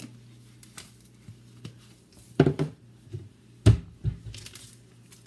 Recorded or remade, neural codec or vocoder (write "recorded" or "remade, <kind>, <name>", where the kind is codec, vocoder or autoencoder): recorded